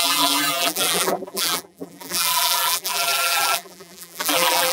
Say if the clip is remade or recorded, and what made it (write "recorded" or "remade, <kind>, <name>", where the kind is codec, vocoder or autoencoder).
remade, vocoder, BigVGAN v2